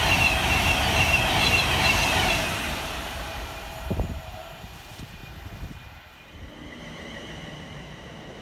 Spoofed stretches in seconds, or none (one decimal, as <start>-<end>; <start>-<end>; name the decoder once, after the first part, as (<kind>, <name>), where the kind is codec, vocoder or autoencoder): 0.0-5.2 (vocoder, BigVGAN v2); 5.7-8.4

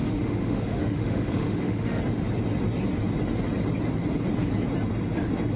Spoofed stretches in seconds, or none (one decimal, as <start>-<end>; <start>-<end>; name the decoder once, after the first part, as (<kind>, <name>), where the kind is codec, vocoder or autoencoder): 0.0-2.0 (autoencoder, DAC-VAE)

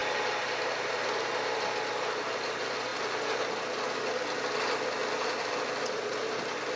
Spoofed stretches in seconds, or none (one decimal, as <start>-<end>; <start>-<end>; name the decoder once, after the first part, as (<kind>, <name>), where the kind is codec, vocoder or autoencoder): none

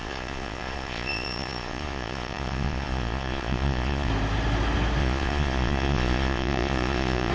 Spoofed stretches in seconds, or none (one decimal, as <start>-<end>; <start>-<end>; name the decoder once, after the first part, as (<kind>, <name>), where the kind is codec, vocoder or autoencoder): 0.0-4.1 (vocoder, Vocos); 5.0-7.3

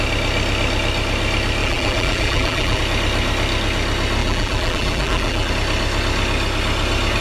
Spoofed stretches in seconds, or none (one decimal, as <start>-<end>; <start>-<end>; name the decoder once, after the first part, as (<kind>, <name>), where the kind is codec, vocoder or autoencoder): 1.6-2.8 (vocoder, BigVGAN v2); 4.2-5.5

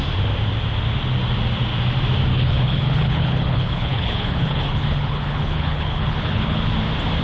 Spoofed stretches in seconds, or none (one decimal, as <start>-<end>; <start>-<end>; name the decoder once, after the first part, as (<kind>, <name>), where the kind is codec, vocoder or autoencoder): 2.3-6.6 (codec, HILCodec)

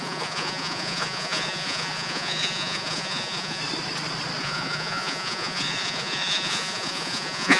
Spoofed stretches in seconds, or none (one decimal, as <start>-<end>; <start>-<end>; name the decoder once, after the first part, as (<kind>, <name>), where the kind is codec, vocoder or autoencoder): 0.0-3.6 (vocoder, Vocos); 4.4-7.6

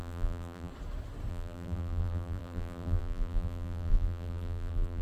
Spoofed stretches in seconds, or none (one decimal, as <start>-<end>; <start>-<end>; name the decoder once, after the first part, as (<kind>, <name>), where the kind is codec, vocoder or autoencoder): 0.0-0.7 (vocoder, BigVGAN v2); 1.3-5.0